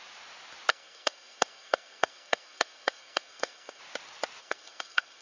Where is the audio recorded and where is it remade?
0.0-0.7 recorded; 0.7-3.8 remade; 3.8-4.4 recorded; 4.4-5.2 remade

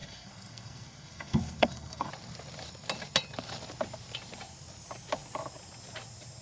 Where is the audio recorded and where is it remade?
0.0-2.1 remade; 2.1-6.4 recorded

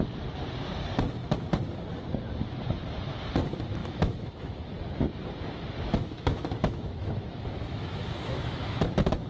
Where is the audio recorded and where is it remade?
0.0-3.8 recorded; 3.8-4.7 remade; 4.7-5.9 recorded; 5.9-8.8 remade; 8.8-9.3 recorded

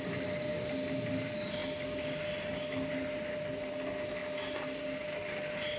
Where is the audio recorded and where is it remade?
0.0-5.8 recorded

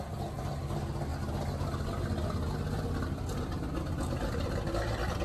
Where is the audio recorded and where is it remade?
0.0-1.1 remade; 1.1-4.2 recorded; 4.2-5.2 remade

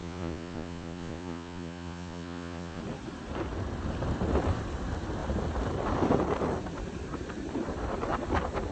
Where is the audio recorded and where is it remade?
0.0-2.8 remade; 2.8-8.7 recorded